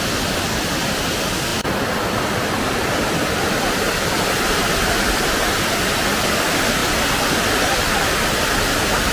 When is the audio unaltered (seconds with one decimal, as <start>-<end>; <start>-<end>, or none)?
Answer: 0.0-1.5; 4.2-6.8; 8.1-9.1